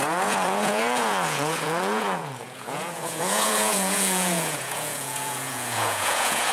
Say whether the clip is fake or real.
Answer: fake